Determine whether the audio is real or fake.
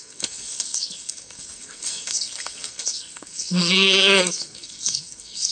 fake